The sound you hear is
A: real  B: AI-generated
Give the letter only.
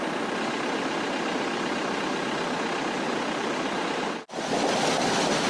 A